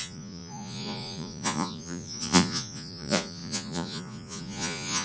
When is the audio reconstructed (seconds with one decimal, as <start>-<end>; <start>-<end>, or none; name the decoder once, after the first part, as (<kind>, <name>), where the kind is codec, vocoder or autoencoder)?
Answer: 0.0-5.0 (vocoder, Vocos)